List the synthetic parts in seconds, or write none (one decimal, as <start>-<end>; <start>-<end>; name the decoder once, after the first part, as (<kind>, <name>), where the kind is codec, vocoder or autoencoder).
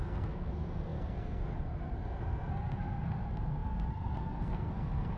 0.0-5.2 (codec, SNAC)